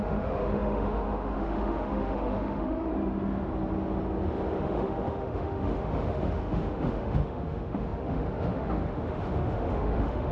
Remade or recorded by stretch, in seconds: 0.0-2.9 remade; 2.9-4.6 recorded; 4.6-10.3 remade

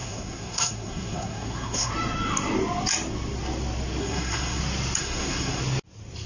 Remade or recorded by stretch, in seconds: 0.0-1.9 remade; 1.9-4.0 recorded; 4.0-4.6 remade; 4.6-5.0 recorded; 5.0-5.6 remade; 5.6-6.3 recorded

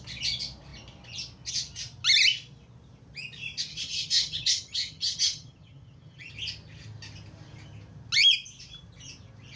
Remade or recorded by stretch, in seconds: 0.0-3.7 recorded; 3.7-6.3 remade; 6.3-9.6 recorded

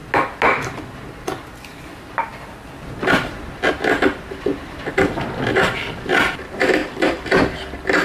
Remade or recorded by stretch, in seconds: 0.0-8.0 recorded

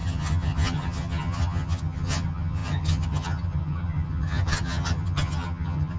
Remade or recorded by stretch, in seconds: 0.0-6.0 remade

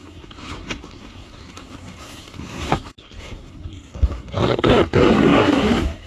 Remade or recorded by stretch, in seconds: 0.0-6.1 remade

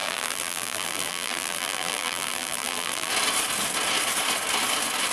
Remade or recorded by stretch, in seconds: 0.0-3.1 remade; 3.1-5.1 recorded

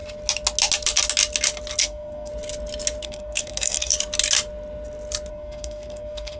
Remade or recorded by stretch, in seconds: 0.0-1.8 recorded; 1.8-2.3 remade; 2.3-3.0 recorded; 3.0-3.9 remade; 3.9-5.3 recorded; 5.3-6.4 remade